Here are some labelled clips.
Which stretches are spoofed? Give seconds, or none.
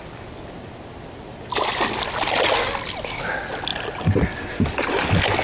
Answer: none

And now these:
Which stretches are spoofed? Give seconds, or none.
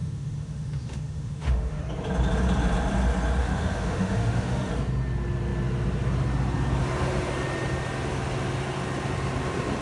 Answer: 0.0-1.8 (autoencoder, DAC-VAE); 3.4-4.7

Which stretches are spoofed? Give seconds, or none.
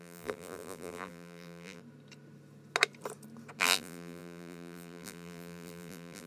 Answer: 0.0-1.8 (vocoder, BigVGAN v2); 3.6-6.3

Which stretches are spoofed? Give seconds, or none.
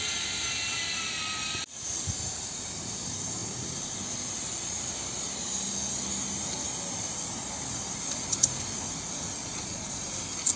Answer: 9.4-10.0 (vocoder, Vocos)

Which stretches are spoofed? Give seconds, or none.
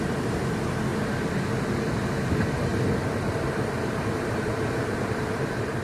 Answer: 0.0-0.9 (vocoder, BigVGAN v2); 2.1-2.7; 3.3-5.8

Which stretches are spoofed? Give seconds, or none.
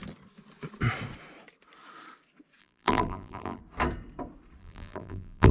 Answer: 2.6-3.6 (vocoder, BigVGAN v2); 4.6-5.5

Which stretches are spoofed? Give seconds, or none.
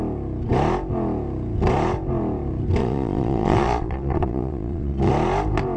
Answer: 2.8-5.1 (vocoder, Vocos)